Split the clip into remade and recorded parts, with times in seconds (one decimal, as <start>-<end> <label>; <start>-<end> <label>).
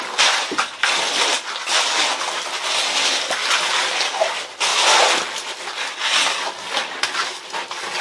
0.0-8.0 recorded